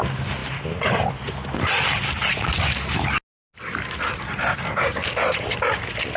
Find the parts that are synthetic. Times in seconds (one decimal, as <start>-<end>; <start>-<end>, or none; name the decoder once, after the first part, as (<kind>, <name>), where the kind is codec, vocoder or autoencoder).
none